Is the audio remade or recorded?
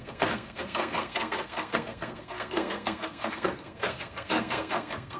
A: remade